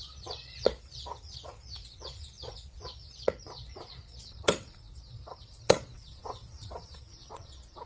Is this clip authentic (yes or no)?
no